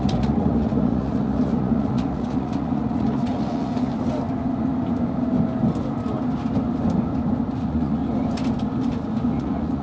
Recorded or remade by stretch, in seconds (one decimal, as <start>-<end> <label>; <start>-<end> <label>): 0.0-3.9 remade; 3.9-7.6 recorded; 7.6-8.0 remade; 8.0-9.3 recorded; 9.3-9.8 remade